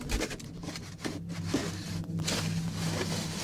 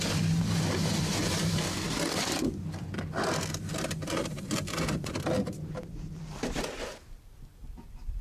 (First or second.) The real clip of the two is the first